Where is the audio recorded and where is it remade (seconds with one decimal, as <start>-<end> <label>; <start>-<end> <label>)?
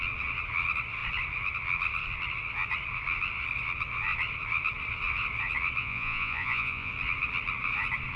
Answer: 0.0-5.8 recorded; 5.8-6.9 remade; 6.9-8.2 recorded